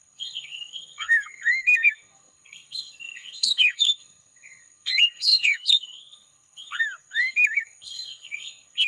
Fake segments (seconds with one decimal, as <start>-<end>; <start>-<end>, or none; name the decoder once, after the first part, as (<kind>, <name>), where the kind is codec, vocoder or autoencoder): 0.0-8.9 (codec, SNAC)